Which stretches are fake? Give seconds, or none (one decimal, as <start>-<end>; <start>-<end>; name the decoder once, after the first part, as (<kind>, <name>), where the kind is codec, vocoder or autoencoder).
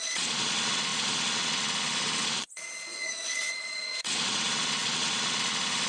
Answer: 0.0-5.9 (vocoder, Vocos)